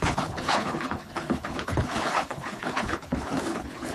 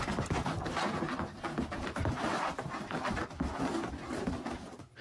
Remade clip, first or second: first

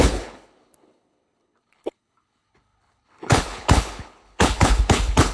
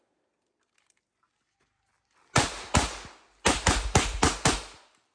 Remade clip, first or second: first